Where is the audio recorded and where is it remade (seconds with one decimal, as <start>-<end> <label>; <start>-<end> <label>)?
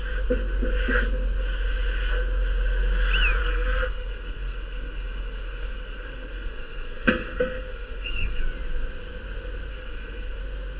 0.0-3.4 recorded; 3.4-8.4 remade; 8.4-9.7 recorded; 9.7-10.4 remade; 10.4-10.8 recorded